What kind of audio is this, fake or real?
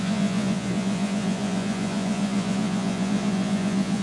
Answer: fake